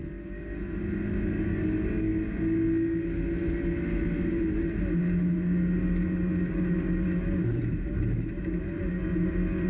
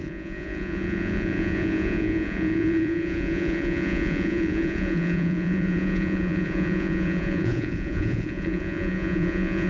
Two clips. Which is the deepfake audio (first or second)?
second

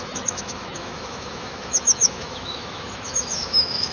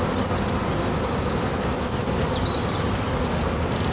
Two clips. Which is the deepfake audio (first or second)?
first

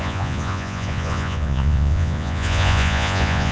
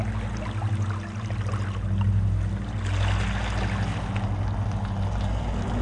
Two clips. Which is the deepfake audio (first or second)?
first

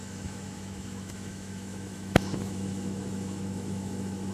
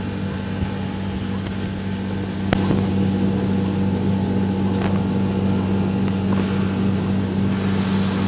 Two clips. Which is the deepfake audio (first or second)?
first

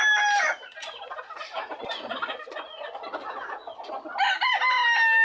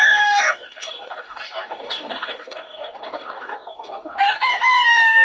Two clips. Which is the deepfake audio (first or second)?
second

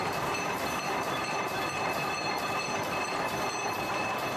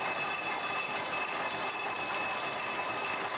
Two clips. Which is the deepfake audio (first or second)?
first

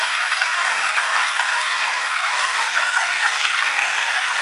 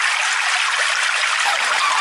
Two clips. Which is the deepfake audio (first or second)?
first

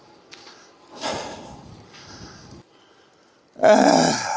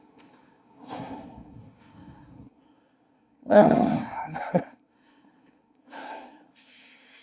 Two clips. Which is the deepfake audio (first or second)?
second